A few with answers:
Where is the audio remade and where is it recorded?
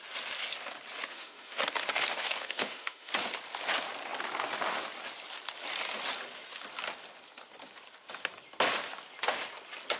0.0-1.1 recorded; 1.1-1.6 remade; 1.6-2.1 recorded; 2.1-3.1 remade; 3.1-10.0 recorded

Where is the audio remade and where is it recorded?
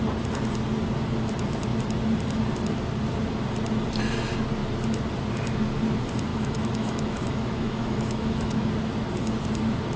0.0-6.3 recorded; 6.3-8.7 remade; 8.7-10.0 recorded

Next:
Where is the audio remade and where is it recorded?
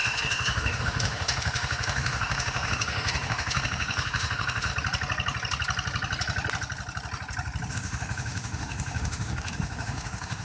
0.0-4.7 remade; 4.7-7.7 recorded; 7.7-10.4 remade